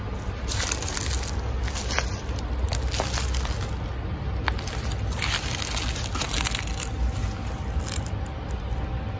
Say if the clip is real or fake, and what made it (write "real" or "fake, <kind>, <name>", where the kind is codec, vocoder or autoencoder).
real